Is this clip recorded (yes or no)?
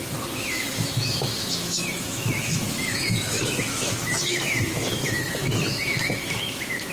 no